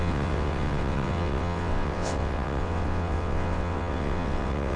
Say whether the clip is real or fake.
fake